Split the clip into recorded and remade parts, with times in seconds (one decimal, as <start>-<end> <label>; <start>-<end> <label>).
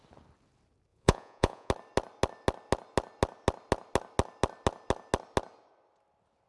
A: 0.0-0.9 recorded; 0.9-1.7 remade; 1.7-6.5 recorded